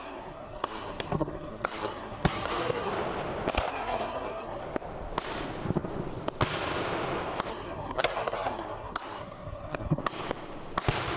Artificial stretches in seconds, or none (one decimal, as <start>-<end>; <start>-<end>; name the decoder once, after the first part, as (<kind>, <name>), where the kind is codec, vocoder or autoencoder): 0.0-2.9 (codec, SNAC); 3.7-4.6; 7.5-10.0